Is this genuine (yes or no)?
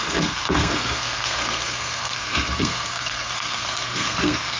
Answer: no